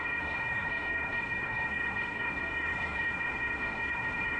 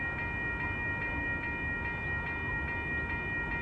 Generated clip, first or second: first